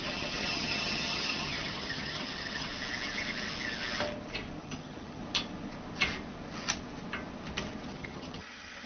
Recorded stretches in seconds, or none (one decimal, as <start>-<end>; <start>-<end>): 2.7-4.6; 5.2-7.9